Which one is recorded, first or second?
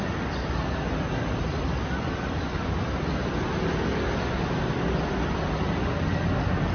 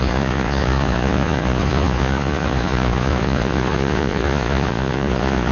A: first